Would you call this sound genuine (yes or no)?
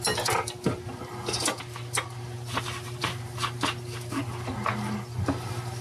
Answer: yes